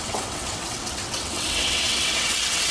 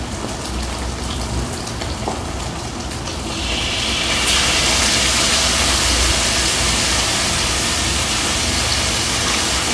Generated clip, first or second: first